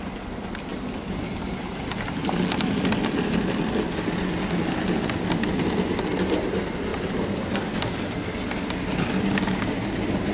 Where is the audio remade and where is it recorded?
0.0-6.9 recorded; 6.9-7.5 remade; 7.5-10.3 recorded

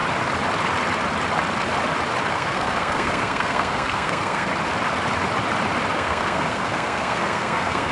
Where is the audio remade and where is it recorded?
0.0-2.3 recorded; 2.3-4.5 remade; 4.5-5.9 recorded; 5.9-7.9 remade